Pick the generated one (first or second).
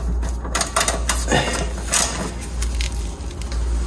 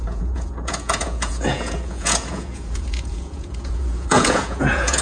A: second